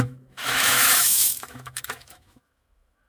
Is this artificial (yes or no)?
yes